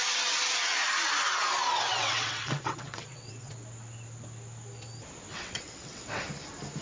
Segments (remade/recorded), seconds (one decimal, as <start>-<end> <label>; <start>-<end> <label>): 0.0-1.9 recorded; 1.9-3.5 remade; 3.5-5.3 recorded; 5.3-6.3 remade; 6.3-6.8 recorded